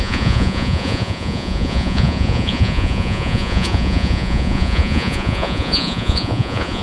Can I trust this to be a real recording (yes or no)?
no